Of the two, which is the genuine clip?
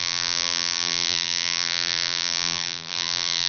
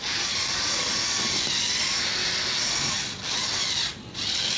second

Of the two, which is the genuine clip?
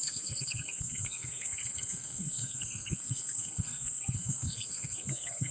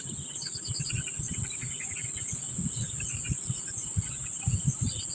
second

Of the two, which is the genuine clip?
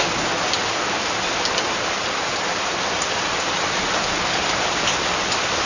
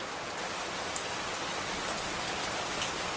second